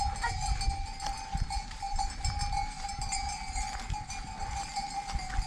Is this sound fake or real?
real